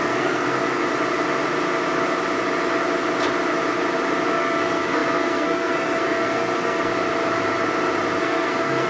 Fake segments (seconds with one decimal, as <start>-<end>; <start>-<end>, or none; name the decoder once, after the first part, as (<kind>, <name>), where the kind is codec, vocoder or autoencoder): 0.0-0.8 (codec, SNAC); 4.3-6.9; 8.2-8.9